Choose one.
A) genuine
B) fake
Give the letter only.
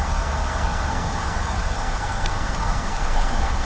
B